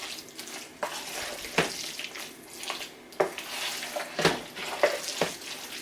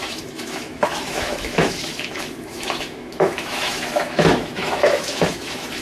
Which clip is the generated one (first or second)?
second